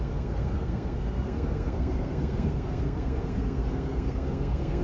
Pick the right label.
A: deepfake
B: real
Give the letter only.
A